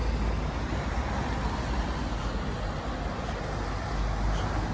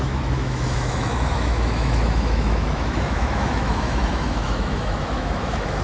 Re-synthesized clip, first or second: second